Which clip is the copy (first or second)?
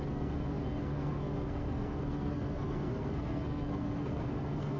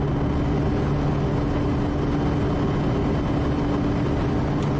first